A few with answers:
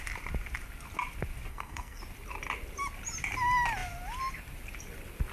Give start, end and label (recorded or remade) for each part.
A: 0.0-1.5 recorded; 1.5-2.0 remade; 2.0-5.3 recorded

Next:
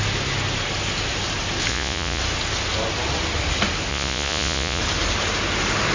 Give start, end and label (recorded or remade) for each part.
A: 0.0-1.7 recorded; 1.7-2.2 remade; 2.2-3.9 recorded; 3.9-4.8 remade; 4.8-5.9 recorded